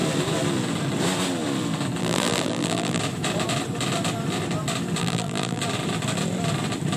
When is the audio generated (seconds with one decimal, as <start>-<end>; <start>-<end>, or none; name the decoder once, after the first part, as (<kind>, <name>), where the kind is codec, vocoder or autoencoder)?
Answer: 2.0-3.0 (vocoder, BigVGAN v2); 5.0-5.6